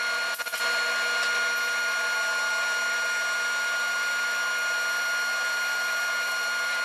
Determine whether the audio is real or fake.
real